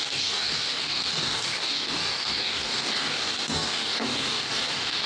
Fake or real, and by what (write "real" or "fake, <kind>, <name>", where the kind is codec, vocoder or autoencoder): fake, codec, DAC